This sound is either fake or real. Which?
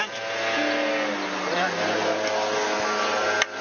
real